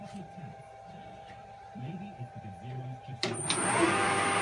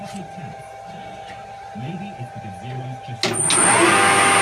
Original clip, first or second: second